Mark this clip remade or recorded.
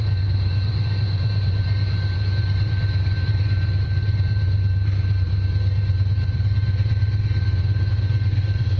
remade